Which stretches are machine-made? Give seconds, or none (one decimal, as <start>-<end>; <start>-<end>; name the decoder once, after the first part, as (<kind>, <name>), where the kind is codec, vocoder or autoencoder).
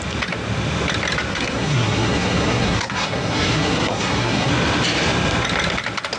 1.3-4.5 (codec, SNAC)